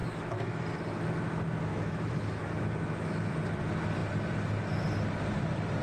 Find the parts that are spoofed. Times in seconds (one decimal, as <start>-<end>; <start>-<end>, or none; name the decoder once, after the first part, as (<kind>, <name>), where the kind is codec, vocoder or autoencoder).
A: 0.0-0.6 (autoencoder, DAC-VAE); 1.7-3.3